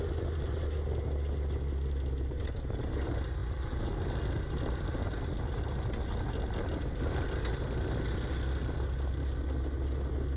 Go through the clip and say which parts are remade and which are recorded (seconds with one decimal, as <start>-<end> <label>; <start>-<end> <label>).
0.0-10.4 recorded